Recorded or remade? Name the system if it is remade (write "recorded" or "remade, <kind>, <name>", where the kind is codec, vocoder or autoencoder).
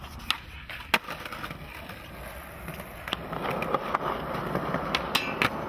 recorded